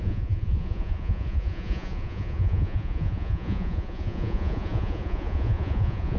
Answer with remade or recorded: remade